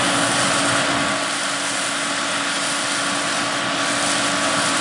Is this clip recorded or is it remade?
recorded